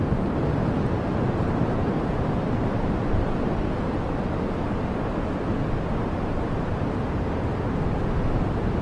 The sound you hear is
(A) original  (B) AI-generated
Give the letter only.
A